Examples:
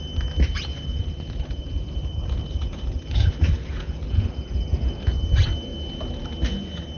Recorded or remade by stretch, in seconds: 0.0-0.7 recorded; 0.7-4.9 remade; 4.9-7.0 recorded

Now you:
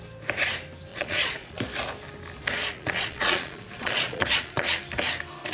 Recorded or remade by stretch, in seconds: 0.0-0.9 recorded; 0.9-1.6 remade; 1.6-2.6 recorded; 2.6-4.8 remade; 4.8-5.5 recorded

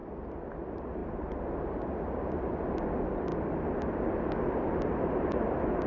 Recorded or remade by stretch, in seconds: 0.0-5.9 recorded

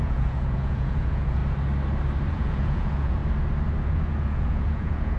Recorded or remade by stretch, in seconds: 0.0-1.4 remade; 1.4-2.3 recorded; 2.3-3.2 remade; 3.2-3.9 recorded; 3.9-5.2 remade

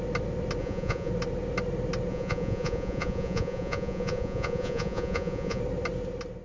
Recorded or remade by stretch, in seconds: 0.0-0.6 recorded; 0.6-1.1 remade; 1.1-2.1 recorded; 2.1-5.6 remade; 5.6-6.4 recorded

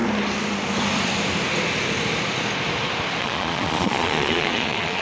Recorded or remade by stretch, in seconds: 0.0-3.2 recorded; 3.2-5.0 remade

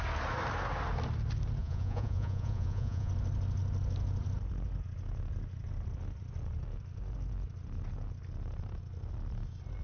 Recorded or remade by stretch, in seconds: 0.0-1.6 recorded; 1.6-3.1 remade; 3.1-9.8 recorded